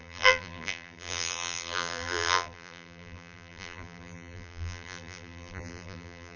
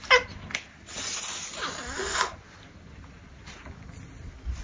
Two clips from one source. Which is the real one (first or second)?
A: second